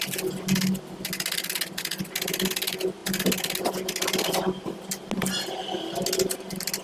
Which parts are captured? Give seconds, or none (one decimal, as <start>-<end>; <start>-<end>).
0.0-6.8